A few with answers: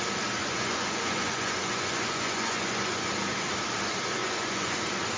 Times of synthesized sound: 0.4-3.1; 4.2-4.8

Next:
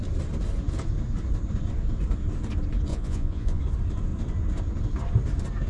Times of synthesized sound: 2.9-3.6

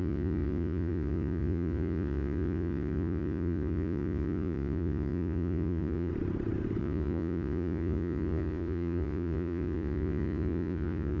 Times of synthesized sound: 0.0-6.1; 6.8-11.2

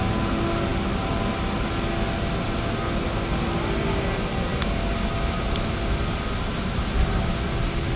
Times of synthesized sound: none

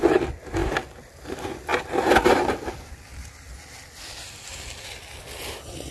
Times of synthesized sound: none

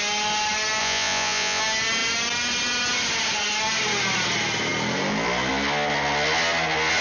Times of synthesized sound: 0.8-1.6

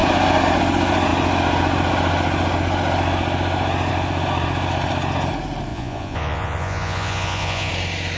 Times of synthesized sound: 5.7-7.7